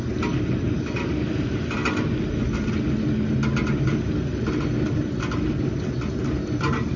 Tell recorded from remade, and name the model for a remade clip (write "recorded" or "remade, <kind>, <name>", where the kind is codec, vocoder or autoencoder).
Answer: recorded